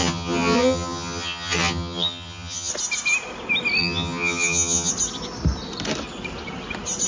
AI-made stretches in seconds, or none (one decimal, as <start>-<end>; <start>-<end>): 0.0-2.7; 3.8-4.9